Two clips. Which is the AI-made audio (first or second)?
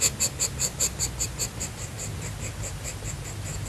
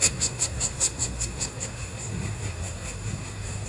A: second